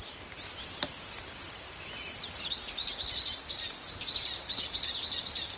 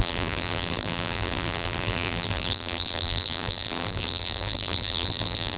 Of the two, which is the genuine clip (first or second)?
first